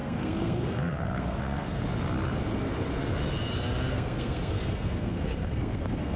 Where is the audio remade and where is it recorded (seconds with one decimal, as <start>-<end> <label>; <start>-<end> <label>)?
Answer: 0.0-1.8 remade; 1.8-3.9 recorded; 3.9-6.2 remade